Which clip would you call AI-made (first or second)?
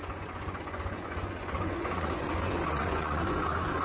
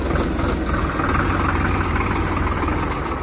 first